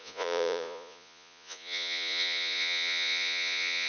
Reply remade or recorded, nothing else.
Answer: remade